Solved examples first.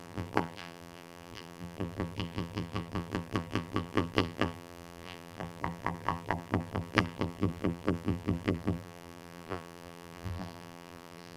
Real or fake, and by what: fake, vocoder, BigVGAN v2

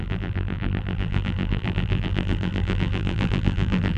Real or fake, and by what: fake, vocoder, BigVGAN v2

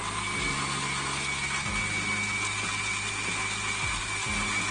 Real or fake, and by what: real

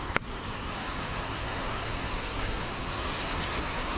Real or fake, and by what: fake, codec, SNAC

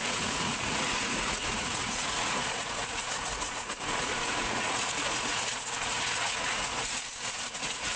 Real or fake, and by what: fake, vocoder, Vocos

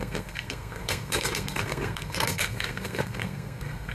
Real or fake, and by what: fake, codec, SNAC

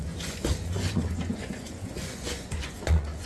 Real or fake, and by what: fake, vocoder, Vocos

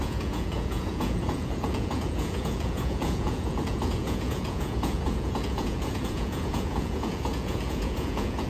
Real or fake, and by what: fake, vocoder, Vocos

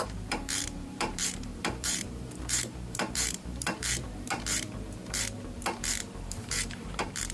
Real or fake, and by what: fake, vocoder, BigVGAN v2